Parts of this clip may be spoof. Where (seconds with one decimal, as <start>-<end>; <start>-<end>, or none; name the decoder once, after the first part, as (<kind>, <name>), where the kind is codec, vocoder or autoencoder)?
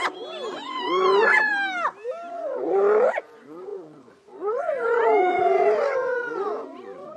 0.5-1.5 (vocoder, Vocos); 2.3-7.2